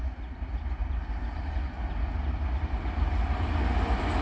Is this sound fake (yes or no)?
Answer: no